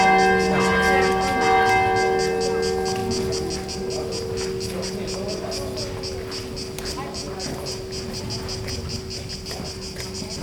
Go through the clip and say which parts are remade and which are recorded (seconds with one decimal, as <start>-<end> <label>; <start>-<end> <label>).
0.0-10.4 recorded